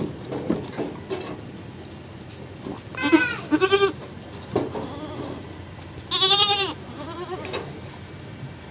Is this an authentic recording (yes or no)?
yes